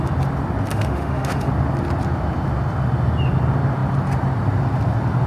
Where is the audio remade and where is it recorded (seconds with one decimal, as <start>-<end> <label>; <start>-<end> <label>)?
0.0-0.7 recorded; 0.7-1.5 remade; 1.5-5.3 recorded